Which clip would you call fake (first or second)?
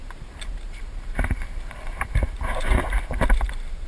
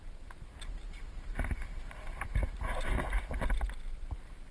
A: first